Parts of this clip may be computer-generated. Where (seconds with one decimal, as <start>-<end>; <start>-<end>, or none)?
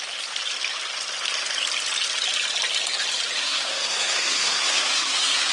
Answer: 3.4-5.5